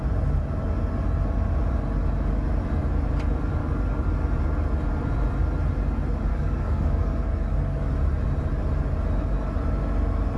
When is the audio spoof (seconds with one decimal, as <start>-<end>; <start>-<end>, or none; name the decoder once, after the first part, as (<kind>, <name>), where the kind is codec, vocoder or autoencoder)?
3.6-4.1 (codec, DAC); 6.3-7.9